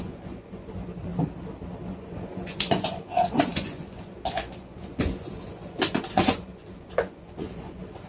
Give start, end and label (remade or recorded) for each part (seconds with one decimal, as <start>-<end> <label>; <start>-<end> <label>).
0.0-1.1 remade; 1.1-1.9 recorded; 1.9-8.1 remade

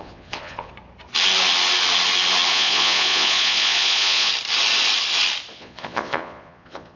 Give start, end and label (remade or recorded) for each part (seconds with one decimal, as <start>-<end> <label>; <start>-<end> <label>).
0.0-0.7 remade; 0.7-2.5 recorded; 2.5-4.3 remade; 4.3-5.5 recorded; 5.5-7.0 remade